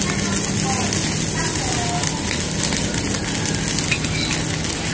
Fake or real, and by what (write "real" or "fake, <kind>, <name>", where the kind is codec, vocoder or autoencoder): real